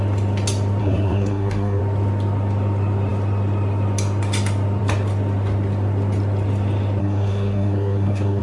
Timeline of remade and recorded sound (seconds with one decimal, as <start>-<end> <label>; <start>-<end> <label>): 0.0-0.8 recorded; 0.8-1.8 remade; 1.8-7.0 recorded; 7.0-8.4 remade